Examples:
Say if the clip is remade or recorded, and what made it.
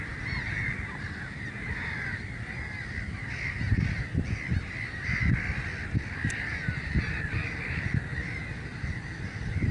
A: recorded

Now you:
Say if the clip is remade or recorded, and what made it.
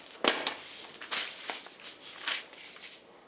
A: recorded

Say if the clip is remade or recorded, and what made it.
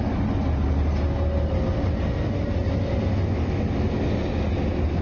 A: recorded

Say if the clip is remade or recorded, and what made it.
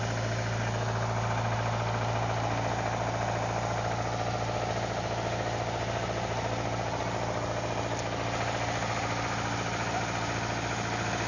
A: recorded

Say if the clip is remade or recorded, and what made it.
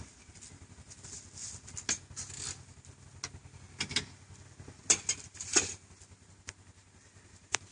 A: recorded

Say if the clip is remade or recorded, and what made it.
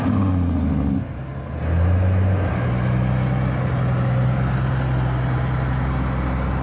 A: recorded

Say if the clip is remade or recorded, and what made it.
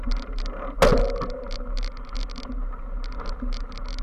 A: recorded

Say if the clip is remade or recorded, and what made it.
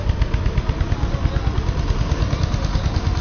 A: recorded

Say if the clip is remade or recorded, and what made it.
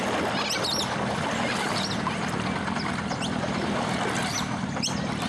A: recorded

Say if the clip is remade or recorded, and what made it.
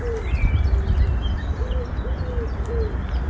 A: recorded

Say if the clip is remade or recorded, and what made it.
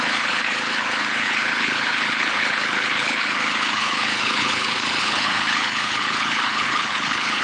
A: remade, codec, HILCodec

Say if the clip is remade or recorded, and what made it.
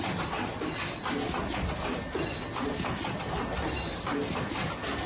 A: recorded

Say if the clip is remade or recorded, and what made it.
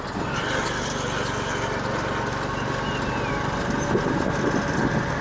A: recorded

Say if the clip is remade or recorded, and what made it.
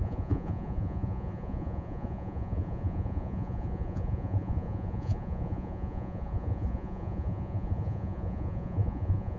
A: remade, vocoder, Vocos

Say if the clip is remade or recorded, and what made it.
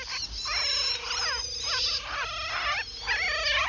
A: recorded